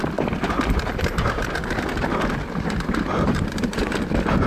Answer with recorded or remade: recorded